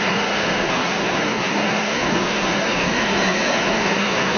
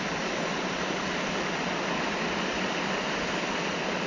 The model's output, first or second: first